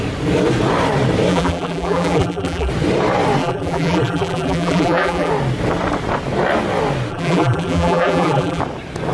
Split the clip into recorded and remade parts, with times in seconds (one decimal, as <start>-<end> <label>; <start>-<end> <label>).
0.0-1.3 recorded; 1.3-2.7 remade; 2.7-3.4 recorded; 3.4-5.3 remade; 5.3-7.1 recorded; 7.1-8.6 remade; 8.6-9.1 recorded